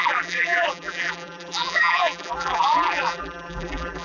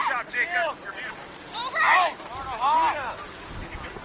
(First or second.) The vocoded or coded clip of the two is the first